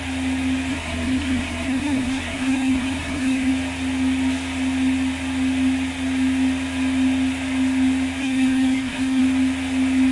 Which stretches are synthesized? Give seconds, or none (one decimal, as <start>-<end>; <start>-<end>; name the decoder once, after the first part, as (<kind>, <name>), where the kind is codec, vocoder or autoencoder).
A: 0.7-3.5 (codec, SNAC); 8.2-9.2